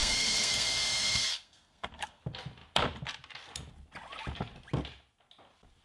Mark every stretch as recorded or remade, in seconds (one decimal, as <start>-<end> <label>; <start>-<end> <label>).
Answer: 0.0-2.2 remade; 2.2-5.8 recorded